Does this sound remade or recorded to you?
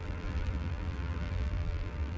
remade